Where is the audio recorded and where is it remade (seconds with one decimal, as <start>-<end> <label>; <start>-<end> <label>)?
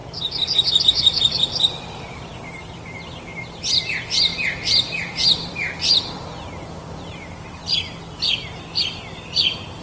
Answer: 0.0-0.8 recorded; 0.8-2.3 remade; 2.3-3.9 recorded; 3.9-7.6 remade; 7.6-9.8 recorded